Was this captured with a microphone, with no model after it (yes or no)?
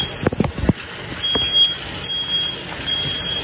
yes